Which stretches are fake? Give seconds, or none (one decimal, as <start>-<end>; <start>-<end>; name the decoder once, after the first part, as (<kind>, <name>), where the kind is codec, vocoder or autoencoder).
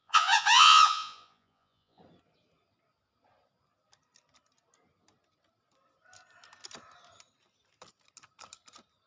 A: 0.0-2.0 (vocoder, Vocos)